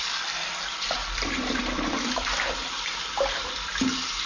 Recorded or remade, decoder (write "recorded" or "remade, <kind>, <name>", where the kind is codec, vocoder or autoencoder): remade, vocoder, BigVGAN v2